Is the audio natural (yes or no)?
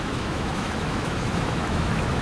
no